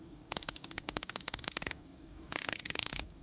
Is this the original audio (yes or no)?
no